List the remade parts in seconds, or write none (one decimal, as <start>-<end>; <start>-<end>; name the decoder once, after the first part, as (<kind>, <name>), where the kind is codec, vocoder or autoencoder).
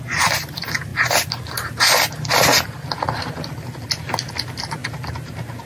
none